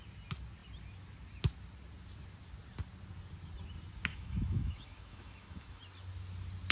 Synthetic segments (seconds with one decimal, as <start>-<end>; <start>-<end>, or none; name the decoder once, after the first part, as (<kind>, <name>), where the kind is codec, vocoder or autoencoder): 4.1-5.8 (autoencoder, DAC-VAE)